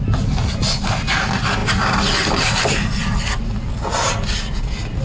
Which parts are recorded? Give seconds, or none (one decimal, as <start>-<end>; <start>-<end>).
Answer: 0.0-5.0